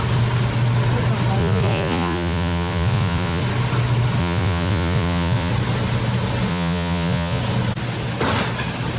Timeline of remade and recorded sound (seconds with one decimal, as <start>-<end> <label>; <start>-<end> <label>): 0.0-1.4 recorded; 1.4-3.4 remade; 3.4-4.2 recorded; 4.2-5.5 remade; 5.5-6.5 recorded; 6.5-7.4 remade; 7.4-9.0 recorded